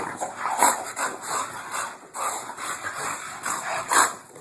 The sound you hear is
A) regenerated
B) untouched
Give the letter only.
B